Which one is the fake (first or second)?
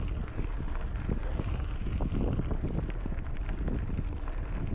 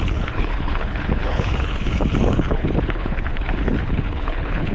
second